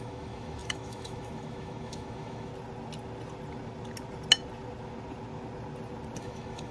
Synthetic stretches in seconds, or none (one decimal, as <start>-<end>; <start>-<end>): 0.0-2.5; 6.2-6.7

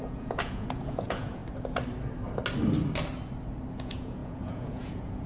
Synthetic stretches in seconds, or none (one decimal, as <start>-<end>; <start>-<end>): 0.0-1.4; 3.7-5.3

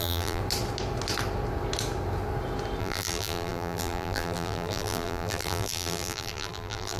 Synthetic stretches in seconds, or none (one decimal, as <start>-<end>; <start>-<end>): 0.0-0.4; 2.8-7.0

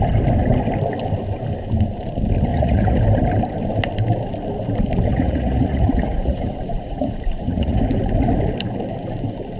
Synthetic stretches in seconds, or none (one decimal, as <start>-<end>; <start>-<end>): 2.5-3.0; 5.1-7.8

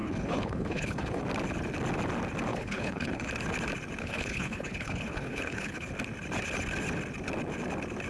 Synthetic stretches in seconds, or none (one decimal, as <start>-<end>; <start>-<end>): 0.0-1.2; 2.5-3.3; 4.0-5.9

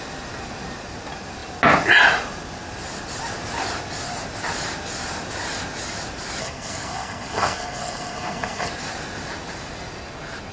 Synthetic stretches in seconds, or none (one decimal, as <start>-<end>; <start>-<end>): 6.4-8.7

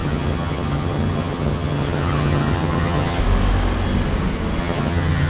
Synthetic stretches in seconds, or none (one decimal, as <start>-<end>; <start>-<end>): 0.0-3.2; 4.6-5.3